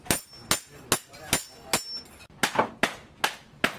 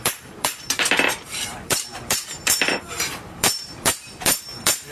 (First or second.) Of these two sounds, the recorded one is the first